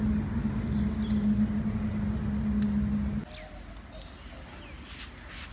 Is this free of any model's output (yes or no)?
yes